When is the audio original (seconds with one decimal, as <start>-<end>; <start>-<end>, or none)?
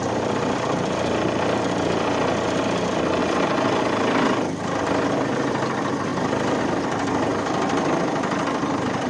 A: 3.2-3.8; 6.1-6.6; 7.3-8.0